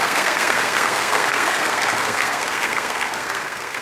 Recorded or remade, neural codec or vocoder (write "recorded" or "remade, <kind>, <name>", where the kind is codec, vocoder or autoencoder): remade, codec, SNAC